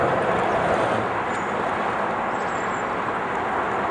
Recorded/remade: recorded